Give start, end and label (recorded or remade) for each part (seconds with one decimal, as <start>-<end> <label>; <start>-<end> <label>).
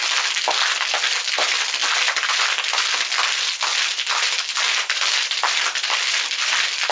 0.0-6.9 recorded